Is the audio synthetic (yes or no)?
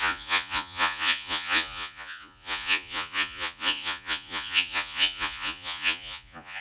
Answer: yes